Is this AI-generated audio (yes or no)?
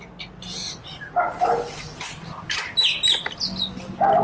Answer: no